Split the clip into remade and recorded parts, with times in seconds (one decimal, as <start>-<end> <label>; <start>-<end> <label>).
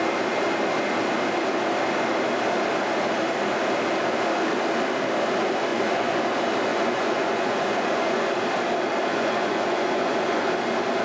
0.0-5.7 recorded; 5.7-6.2 remade; 6.2-6.7 recorded; 6.7-8.3 remade; 8.3-9.1 recorded; 9.1-10.5 remade; 10.5-11.0 recorded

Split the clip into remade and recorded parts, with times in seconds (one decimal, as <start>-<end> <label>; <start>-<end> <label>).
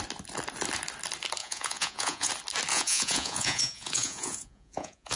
0.0-1.4 recorded; 1.4-2.3 remade; 2.3-2.7 recorded; 2.7-5.2 remade